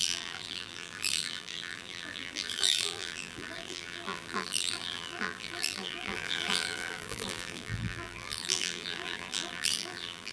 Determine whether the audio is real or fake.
fake